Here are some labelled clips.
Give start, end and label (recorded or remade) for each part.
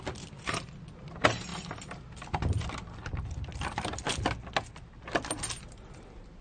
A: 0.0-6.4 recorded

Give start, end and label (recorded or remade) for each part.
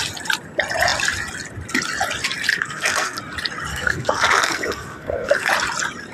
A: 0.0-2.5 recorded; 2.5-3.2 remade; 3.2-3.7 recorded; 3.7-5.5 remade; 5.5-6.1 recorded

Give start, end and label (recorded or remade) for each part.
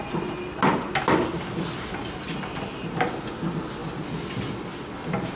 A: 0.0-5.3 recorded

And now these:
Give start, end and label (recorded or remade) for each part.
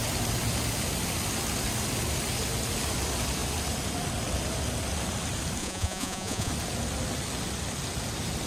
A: 0.0-5.6 recorded; 5.6-6.5 remade; 6.5-8.5 recorded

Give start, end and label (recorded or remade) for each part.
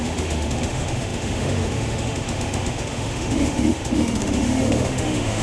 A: 0.0-5.4 remade